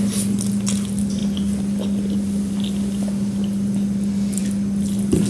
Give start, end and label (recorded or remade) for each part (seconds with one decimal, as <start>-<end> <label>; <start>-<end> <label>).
0.0-5.3 recorded